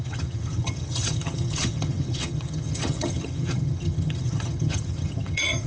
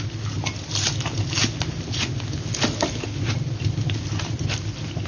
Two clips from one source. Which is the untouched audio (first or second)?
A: second